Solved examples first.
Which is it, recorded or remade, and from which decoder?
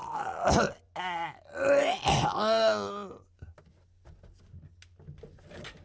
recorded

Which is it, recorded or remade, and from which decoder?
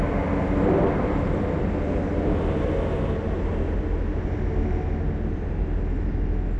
recorded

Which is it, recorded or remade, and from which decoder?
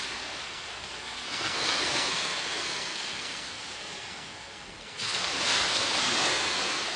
remade, codec, SNAC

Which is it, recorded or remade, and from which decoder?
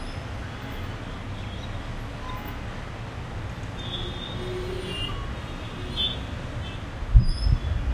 recorded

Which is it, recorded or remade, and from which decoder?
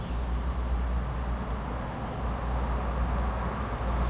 recorded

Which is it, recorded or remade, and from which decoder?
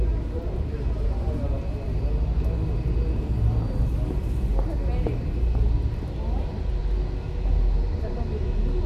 recorded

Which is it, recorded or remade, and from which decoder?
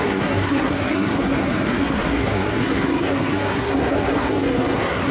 remade, codec, SNAC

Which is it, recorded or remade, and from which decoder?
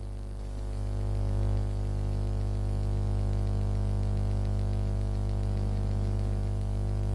recorded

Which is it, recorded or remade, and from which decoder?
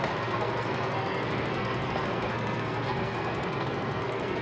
remade, codec, SNAC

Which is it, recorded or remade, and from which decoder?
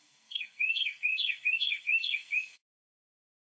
remade, codec, SNAC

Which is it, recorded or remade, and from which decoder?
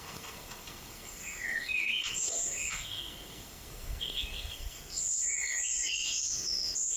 remade, codec, SNAC